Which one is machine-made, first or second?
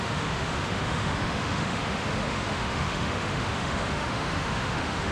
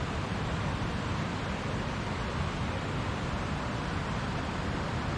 first